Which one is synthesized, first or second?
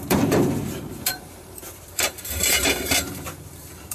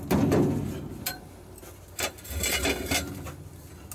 first